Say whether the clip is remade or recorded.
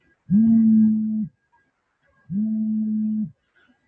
recorded